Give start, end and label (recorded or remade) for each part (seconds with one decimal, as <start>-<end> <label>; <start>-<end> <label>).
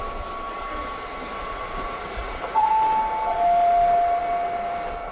0.0-1.4 recorded; 1.4-2.7 remade; 2.7-5.1 recorded